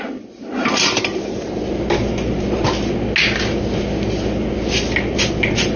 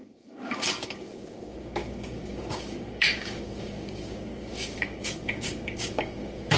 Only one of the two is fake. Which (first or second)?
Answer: second